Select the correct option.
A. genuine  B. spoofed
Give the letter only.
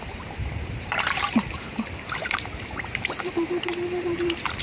B